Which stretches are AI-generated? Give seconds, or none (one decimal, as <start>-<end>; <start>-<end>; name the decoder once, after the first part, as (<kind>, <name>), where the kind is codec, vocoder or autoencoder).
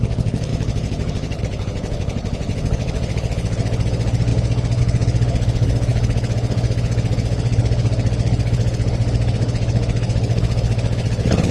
0.0-11.5 (codec, HILCodec)